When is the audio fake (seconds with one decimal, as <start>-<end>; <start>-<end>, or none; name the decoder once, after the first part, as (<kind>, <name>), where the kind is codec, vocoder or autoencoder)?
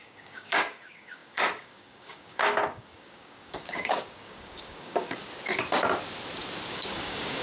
0.0-5.2 (codec, DAC); 6.7-7.4